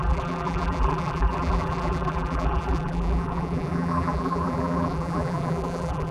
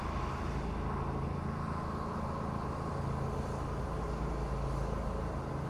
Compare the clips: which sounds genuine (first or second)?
second